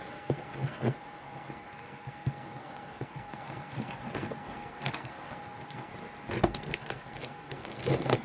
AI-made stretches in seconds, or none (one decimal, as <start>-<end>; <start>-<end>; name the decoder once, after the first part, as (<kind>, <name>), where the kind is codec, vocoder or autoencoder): 0.0-5.9 (codec, SNAC); 6.4-8.2